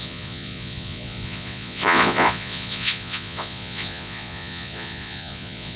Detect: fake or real fake